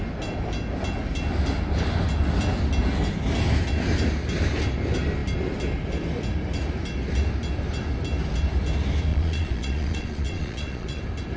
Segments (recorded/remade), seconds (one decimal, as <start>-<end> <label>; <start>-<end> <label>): 0.0-9.1 recorded; 9.1-11.0 remade; 11.0-11.4 recorded